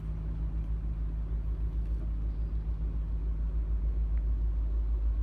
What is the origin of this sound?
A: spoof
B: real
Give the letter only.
B